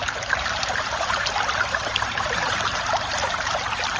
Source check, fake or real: fake